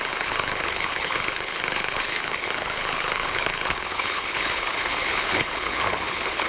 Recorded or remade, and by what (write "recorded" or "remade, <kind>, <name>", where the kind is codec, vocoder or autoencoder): remade, codec, HILCodec